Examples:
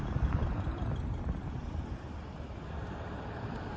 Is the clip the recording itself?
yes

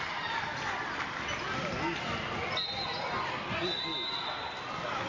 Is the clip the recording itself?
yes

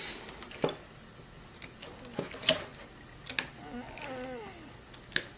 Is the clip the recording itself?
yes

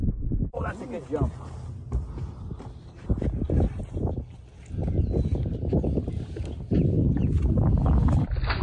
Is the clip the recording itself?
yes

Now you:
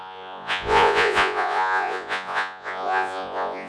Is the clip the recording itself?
no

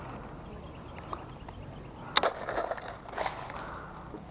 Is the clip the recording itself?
yes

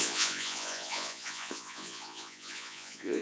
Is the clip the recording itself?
no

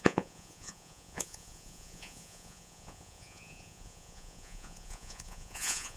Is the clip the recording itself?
no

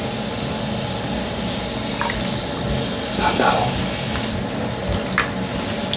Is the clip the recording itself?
yes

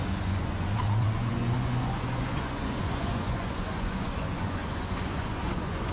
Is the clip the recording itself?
no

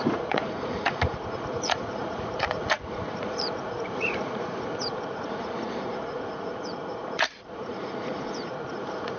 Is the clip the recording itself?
no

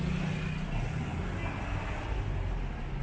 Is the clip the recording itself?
yes